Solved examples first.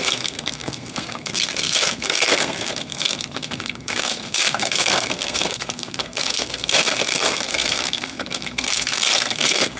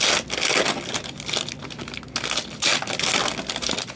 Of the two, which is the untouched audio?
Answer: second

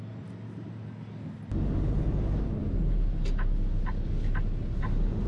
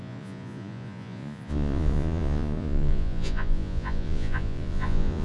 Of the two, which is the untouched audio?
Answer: first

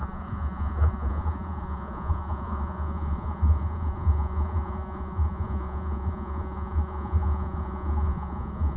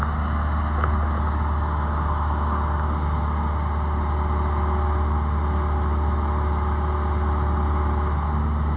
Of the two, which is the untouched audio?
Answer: second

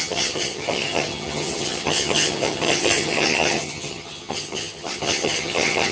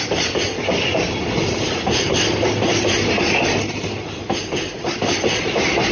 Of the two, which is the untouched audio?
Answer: second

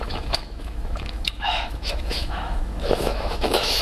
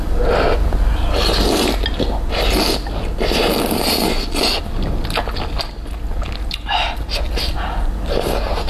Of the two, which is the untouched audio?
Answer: second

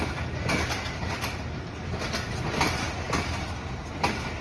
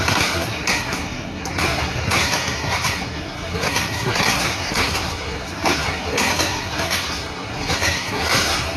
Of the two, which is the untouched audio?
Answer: first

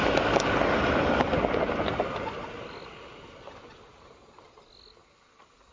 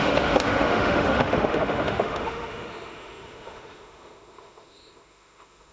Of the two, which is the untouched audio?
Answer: first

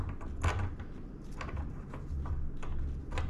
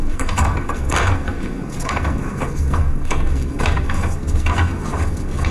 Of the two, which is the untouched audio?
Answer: first